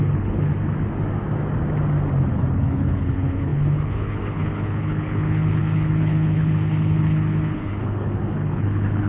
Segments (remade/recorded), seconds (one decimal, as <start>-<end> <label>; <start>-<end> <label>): 0.0-0.5 remade; 0.5-2.3 recorded; 2.3-9.1 remade